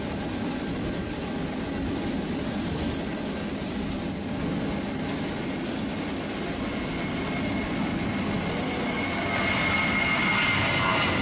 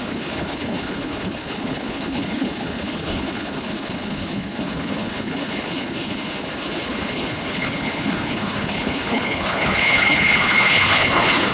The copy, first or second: second